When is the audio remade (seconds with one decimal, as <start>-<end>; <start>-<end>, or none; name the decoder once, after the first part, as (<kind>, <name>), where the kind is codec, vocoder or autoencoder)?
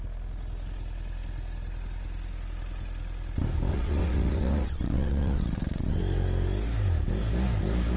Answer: 3.7-6.0 (vocoder, WaveNeXt)